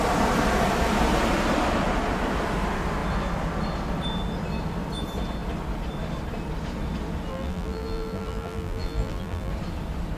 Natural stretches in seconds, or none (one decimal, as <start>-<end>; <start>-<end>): 0.0-7.3; 9.5-10.2